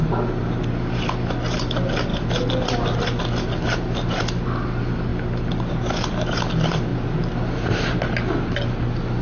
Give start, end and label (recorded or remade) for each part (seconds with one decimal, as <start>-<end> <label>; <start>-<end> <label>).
0.0-5.1 recorded; 5.1-6.5 remade; 6.5-6.9 recorded; 6.9-8.0 remade; 8.0-9.2 recorded

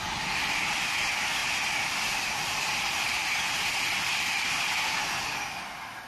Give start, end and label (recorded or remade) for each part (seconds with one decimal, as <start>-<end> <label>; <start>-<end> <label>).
0.0-1.4 remade; 1.4-1.9 recorded; 1.9-6.1 remade

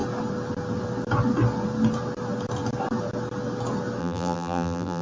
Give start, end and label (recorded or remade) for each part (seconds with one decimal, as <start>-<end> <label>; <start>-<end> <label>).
0.0-4.0 recorded; 4.0-5.0 remade

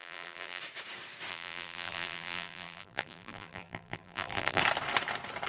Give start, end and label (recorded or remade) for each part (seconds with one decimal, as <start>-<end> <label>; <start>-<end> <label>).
0.0-0.6 remade; 0.6-1.3 recorded; 1.3-4.6 remade; 4.6-5.5 recorded

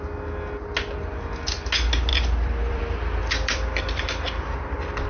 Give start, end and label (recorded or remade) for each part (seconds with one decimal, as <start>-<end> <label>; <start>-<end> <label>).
0.0-2.1 recorded; 2.1-2.8 remade; 2.8-3.2 recorded; 3.2-4.0 remade; 4.0-5.1 recorded

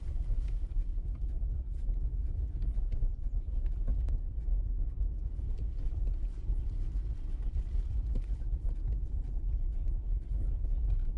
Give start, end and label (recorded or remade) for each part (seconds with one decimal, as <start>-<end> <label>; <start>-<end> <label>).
0.0-3.9 remade; 3.9-4.9 recorded; 4.9-9.7 remade; 9.7-10.3 recorded; 10.3-11.2 remade

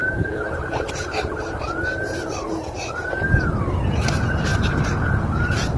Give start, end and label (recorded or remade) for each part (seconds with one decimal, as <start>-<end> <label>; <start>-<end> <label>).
0.0-3.5 remade; 3.5-5.8 recorded

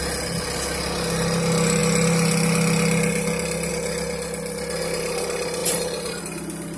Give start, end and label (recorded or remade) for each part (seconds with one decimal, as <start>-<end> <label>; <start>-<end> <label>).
0.0-5.6 recorded; 5.6-6.2 remade; 6.2-6.8 recorded